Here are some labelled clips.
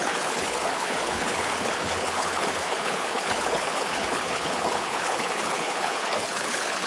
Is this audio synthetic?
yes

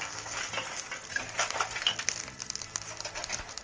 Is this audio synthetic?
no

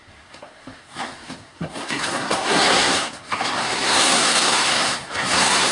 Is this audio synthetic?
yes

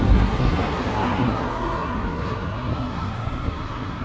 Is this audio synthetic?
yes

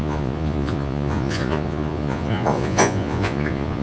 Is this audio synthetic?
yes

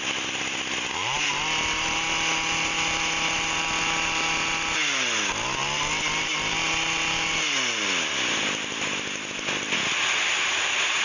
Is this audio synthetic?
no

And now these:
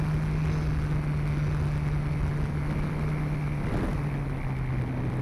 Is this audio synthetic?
no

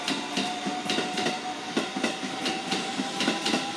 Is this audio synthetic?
no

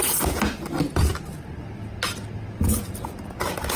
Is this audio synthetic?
no